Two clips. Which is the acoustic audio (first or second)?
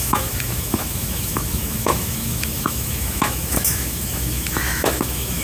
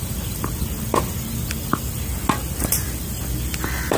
second